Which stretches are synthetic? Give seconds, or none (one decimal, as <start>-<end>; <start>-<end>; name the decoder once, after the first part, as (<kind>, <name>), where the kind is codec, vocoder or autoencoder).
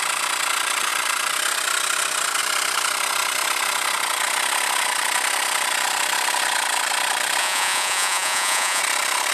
7.4-8.8 (vocoder, Vocos)